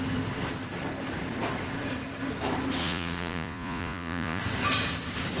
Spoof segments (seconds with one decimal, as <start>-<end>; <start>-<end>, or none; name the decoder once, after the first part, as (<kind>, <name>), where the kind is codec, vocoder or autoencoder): 2.8-4.4 (vocoder, Vocos)